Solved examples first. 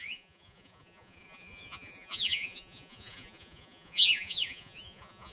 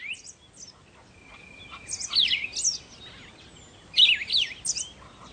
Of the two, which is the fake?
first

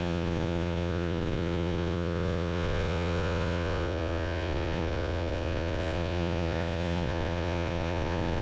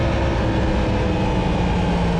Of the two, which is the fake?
first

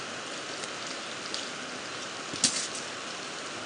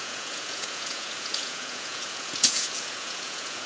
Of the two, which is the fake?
second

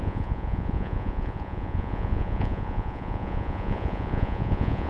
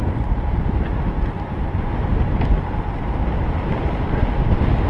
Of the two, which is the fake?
first